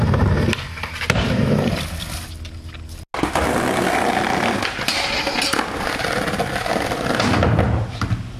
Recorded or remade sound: recorded